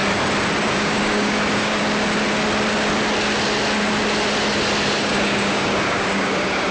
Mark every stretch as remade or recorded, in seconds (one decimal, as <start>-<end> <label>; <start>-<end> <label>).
0.0-0.7 recorded; 0.7-1.8 remade; 1.8-5.0 recorded; 5.0-6.7 remade